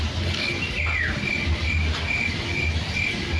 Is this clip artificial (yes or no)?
no